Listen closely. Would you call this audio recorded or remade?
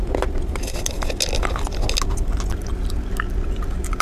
recorded